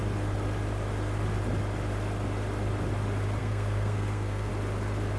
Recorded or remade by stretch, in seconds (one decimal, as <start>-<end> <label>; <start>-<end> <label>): 0.0-3.4 recorded; 3.4-4.5 remade; 4.5-5.2 recorded